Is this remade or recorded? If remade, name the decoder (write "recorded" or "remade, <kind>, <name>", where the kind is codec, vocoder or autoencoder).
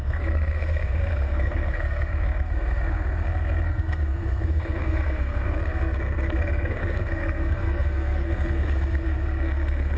remade, codec, SNAC